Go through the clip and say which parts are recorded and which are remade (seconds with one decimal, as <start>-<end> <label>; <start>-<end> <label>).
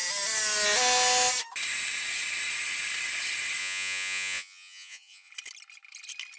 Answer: 0.0-3.6 recorded; 3.6-5.3 remade; 5.3-6.4 recorded